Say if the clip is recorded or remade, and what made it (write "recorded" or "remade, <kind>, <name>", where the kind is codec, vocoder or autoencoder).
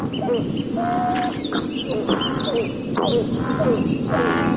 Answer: recorded